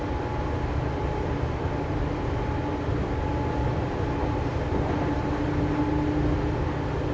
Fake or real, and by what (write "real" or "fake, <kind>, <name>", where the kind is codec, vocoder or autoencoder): real